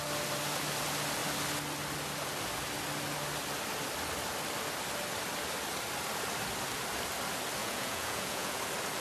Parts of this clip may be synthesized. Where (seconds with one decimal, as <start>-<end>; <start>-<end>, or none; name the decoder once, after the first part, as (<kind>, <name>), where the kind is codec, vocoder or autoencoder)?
7.6-8.6 (vocoder, Vocos)